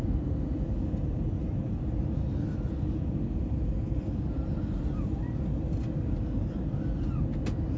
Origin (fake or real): real